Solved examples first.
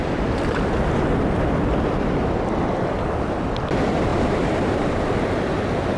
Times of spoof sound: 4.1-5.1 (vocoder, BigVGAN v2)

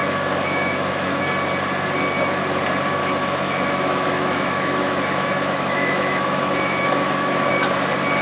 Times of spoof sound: 0.0-1.2 (autoencoder, DAC-VAE); 3.0-7.5

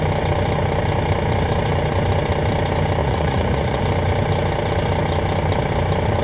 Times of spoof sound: 3.0-3.8 (vocoder, Vocos)

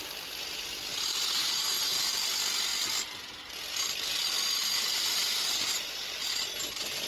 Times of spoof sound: 0.9-2.0 (vocoder, BigVGAN v2); 4.6-6.4

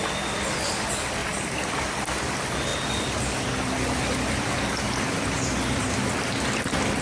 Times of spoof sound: none

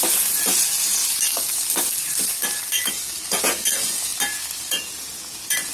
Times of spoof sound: 0.0-1.0 (vocoder, Vocos); 3.3-4.1; 4.6-5.7

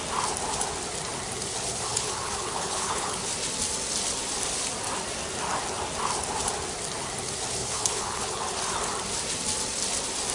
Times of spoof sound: 1.9-3.3 (codec, HILCodec); 7.6-8.4